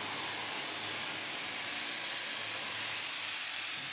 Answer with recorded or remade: recorded